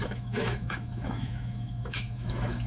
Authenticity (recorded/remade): remade